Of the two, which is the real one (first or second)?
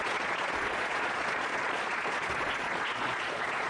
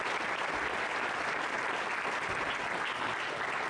second